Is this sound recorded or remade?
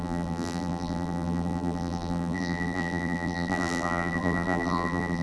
remade